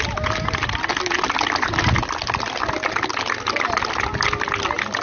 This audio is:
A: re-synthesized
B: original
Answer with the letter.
B